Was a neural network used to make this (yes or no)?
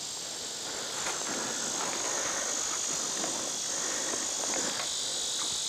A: no